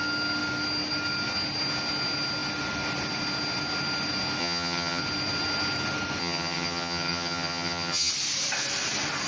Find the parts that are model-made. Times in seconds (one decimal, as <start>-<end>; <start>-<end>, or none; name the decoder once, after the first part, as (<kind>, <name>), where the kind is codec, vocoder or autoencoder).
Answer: 4.4-5.0 (vocoder, HiFi-GAN); 6.2-8.1